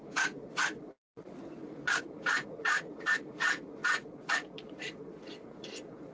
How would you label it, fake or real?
fake